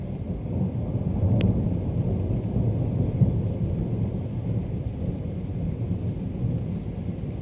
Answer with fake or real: real